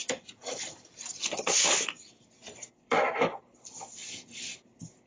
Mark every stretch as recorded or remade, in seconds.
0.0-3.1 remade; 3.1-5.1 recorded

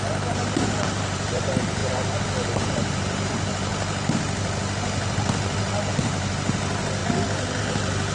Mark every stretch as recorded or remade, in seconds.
0.0-3.7 remade; 3.7-5.9 recorded; 5.9-7.0 remade; 7.0-7.6 recorded; 7.6-8.1 remade

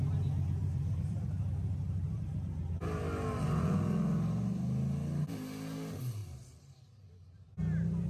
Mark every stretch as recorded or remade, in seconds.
0.0-0.6 recorded; 0.6-2.2 remade; 2.2-8.1 recorded

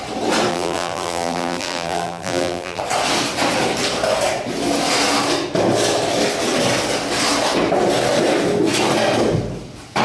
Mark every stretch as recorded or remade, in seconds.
0.0-0.5 recorded; 0.5-2.8 remade; 2.8-10.0 recorded